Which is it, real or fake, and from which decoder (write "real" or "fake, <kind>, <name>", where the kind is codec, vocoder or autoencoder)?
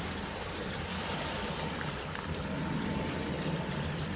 fake, vocoder, BigVGAN v2